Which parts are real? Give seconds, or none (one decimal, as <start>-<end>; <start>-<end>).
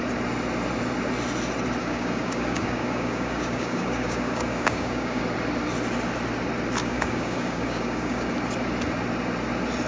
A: 0.0-1.8; 5.2-6.8; 8.3-9.9